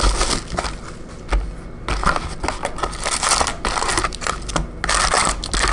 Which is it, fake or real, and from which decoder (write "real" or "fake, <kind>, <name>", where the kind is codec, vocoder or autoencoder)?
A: real